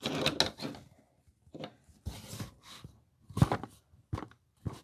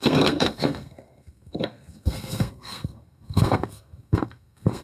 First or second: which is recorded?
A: first